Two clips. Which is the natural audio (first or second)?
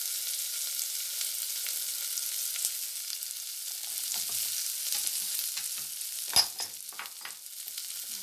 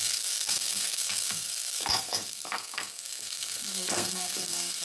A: first